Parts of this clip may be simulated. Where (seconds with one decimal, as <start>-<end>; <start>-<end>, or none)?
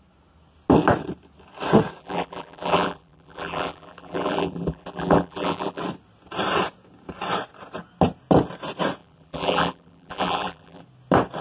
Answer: 2.0-5.8; 9.0-10.8